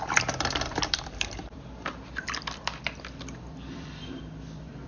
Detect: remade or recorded remade